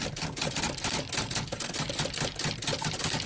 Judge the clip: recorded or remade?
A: recorded